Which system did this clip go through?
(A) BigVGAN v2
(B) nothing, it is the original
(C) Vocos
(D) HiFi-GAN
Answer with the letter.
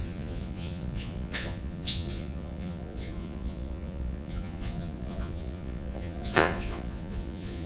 C